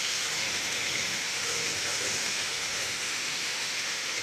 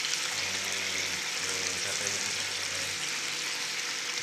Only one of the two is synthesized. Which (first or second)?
first